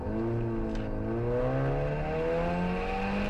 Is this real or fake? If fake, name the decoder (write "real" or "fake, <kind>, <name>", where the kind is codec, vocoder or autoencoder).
real